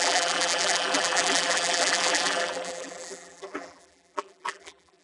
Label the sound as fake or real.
fake